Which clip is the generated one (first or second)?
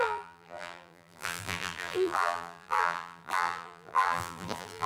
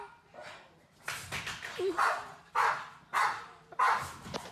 first